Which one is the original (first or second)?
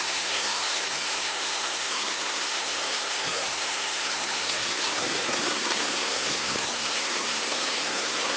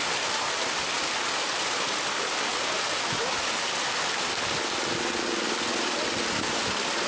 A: second